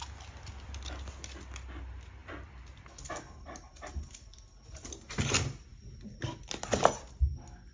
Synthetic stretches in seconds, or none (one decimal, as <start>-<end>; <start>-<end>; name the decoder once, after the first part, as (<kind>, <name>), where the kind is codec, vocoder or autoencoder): none